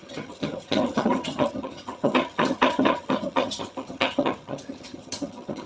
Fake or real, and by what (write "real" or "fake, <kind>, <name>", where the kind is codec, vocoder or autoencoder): fake, vocoder, HiFi-GAN